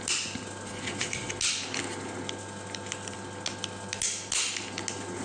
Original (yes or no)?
yes